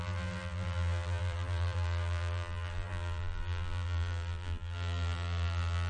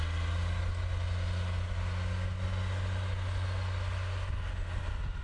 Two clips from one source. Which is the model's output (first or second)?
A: first